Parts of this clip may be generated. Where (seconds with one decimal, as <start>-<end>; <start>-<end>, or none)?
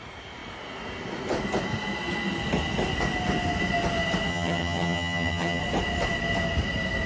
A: 4.3-5.6